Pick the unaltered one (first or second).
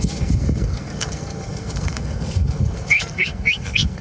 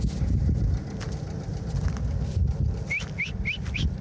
second